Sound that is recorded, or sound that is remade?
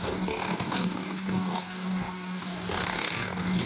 remade